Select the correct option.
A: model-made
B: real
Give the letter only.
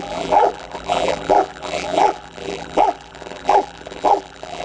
A